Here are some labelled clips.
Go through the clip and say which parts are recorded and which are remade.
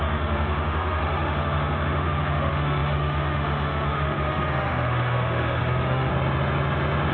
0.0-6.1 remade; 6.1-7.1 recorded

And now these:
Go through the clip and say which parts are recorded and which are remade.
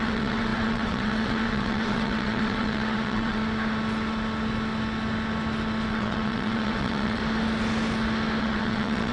0.0-3.4 remade; 3.4-5.9 recorded; 5.9-7.2 remade; 7.2-8.4 recorded; 8.4-9.1 remade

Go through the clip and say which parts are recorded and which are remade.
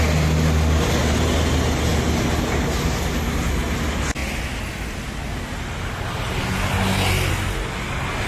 0.0-8.3 recorded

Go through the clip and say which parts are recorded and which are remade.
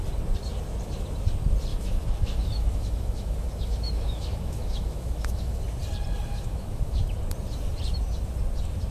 0.0-1.7 recorded; 1.7-5.6 remade; 5.6-6.3 recorded; 6.3-7.0 remade; 7.0-8.9 recorded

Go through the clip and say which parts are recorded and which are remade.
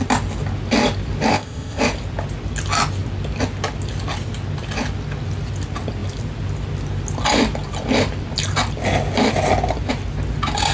0.0-1.3 recorded; 1.3-1.8 remade; 1.8-10.7 recorded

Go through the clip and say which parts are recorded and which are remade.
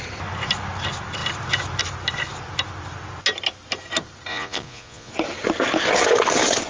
0.0-4.3 recorded; 4.3-5.1 remade; 5.1-6.7 recorded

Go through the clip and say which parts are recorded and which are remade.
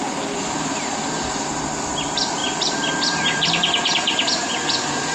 0.0-2.4 recorded; 2.4-5.1 remade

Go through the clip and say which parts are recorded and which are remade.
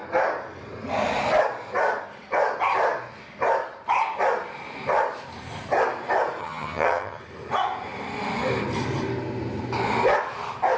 0.0-6.4 recorded; 6.4-7.2 remade; 7.2-10.8 recorded